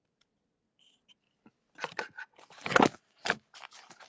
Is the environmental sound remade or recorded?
recorded